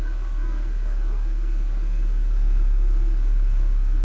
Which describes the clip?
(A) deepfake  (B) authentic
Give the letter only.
A